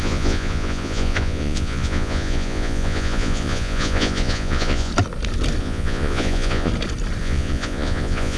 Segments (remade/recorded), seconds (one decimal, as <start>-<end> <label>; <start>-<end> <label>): 0.0-4.9 remade; 4.9-5.6 recorded; 5.6-6.7 remade; 6.7-7.2 recorded; 7.2-8.4 remade